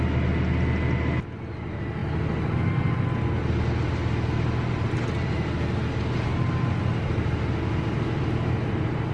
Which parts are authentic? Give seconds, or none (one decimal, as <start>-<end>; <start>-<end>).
0.0-9.1